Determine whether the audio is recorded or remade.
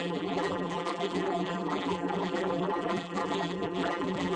remade